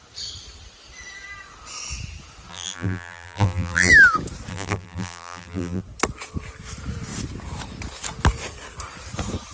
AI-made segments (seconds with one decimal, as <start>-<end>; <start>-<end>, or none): 2.5-3.9; 4.5-5.8